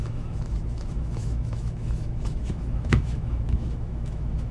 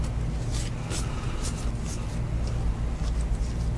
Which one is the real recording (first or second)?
second